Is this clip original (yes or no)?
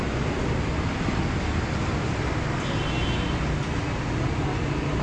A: yes